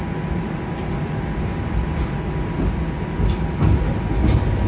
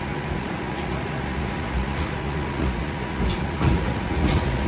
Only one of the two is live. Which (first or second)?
first